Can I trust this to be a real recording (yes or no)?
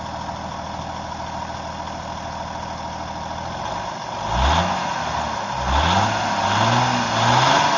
yes